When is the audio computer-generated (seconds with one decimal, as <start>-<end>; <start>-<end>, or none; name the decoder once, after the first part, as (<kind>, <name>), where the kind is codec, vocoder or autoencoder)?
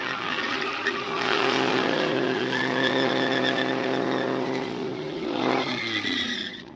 0.0-6.8 (vocoder, Vocos)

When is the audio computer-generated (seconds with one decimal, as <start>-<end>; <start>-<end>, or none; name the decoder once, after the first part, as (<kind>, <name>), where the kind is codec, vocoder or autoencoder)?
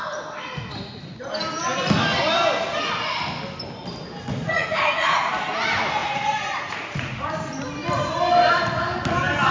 4.4-5.3 (vocoder, Vocos); 6.0-7.3